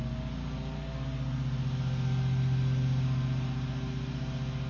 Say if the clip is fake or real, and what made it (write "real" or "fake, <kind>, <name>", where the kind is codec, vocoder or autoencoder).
real